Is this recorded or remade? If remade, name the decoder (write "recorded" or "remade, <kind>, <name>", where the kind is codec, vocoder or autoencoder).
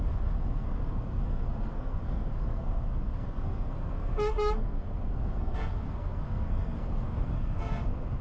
remade, codec, SNAC